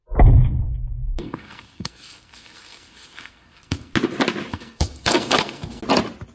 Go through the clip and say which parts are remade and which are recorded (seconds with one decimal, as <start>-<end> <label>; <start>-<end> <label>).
0.0-1.1 recorded; 1.1-3.9 remade; 3.9-4.5 recorded; 4.5-5.8 remade; 5.8-6.3 recorded